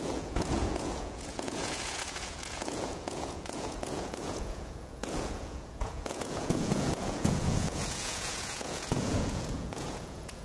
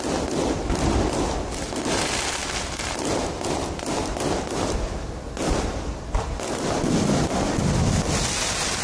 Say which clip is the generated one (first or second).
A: first